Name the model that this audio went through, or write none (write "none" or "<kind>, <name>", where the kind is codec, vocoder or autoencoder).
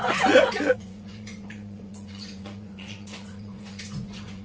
vocoder, Vocos